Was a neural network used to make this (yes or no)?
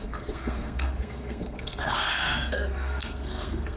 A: yes